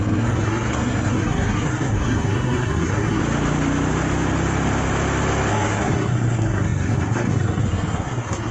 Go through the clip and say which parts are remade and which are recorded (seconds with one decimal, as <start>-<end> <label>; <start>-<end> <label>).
0.0-3.2 remade; 3.2-5.5 recorded; 5.5-8.5 remade